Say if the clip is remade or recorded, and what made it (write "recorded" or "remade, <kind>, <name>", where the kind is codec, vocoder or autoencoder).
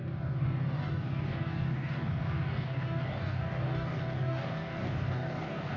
remade, codec, DAC